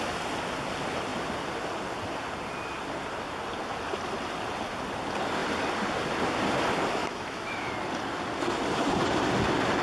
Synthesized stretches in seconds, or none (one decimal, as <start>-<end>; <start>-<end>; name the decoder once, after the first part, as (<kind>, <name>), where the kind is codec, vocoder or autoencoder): 7.0-7.7 (autoencoder, DAC-VAE)